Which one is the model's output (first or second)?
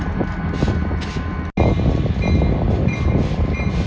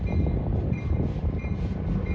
second